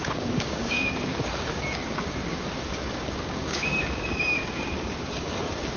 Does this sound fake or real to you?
fake